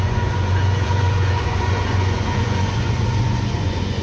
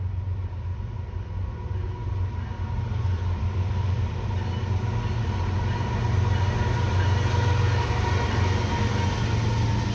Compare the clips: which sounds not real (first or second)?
first